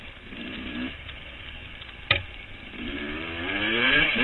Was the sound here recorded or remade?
remade